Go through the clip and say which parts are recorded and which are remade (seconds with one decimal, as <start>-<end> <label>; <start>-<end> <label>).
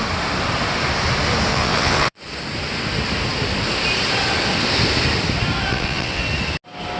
0.0-1.5 recorded; 1.5-2.2 remade; 2.2-5.7 recorded; 5.7-6.2 remade; 6.2-7.0 recorded